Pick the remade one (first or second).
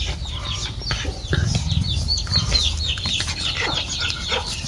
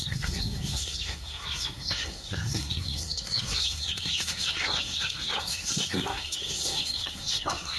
second